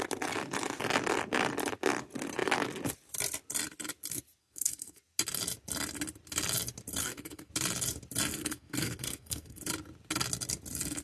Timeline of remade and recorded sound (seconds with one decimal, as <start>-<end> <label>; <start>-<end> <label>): 0.0-4.4 recorded; 4.4-5.0 remade; 5.0-7.0 recorded; 7.0-7.5 remade; 7.5-8.3 recorded; 8.3-9.6 remade; 9.6-11.0 recorded